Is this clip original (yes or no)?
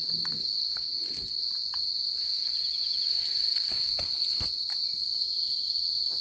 yes